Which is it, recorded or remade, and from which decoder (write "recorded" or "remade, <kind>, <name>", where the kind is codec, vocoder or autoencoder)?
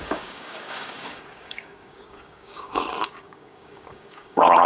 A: remade, codec, DAC